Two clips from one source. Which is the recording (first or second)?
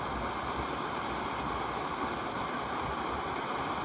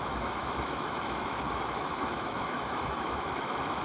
first